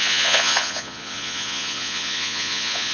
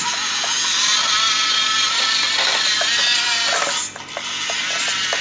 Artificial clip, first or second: first